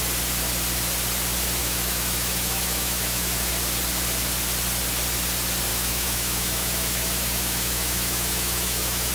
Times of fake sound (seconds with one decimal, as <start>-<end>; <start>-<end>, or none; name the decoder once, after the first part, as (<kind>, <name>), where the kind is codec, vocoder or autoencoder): 1.6-3.5 (autoencoder, DAC-VAE); 5.7-9.1